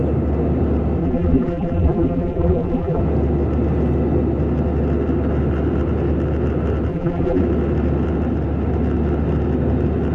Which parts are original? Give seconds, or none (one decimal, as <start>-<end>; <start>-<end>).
0.0-1.0; 3.0-6.9; 7.4-10.1